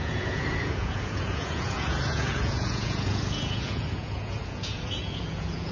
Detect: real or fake fake